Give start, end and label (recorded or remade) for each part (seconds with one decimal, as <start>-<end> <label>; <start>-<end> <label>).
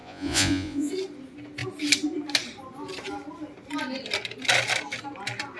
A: 0.0-0.9 remade; 0.9-5.6 recorded